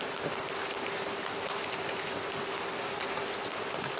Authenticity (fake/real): fake